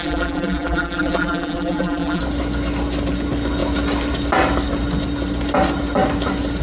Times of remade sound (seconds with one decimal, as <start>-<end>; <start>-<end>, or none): 0.0-2.2